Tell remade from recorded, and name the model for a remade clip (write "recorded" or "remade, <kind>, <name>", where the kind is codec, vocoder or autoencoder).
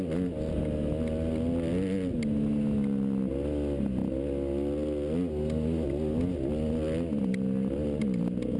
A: recorded